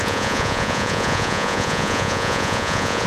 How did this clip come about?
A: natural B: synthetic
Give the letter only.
B